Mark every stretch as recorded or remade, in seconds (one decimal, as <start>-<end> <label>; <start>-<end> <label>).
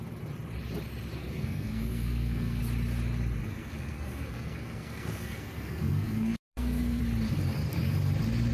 0.0-1.2 recorded; 1.2-2.6 remade; 2.6-3.4 recorded; 3.4-7.0 remade; 7.0-8.5 recorded